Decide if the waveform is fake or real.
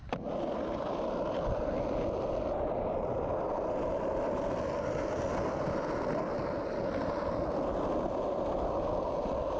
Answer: real